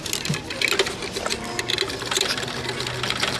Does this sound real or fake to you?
real